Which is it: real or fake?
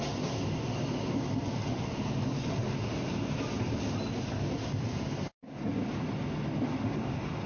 real